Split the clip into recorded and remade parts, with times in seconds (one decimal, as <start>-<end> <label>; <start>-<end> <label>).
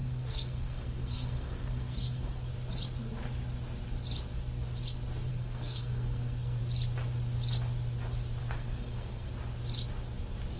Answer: 0.0-2.5 remade; 2.5-5.3 recorded; 5.3-6.6 remade; 6.6-8.4 recorded; 8.4-9.3 remade; 9.3-10.6 recorded